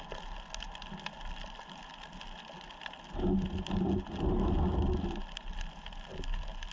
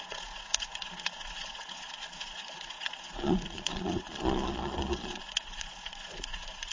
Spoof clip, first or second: second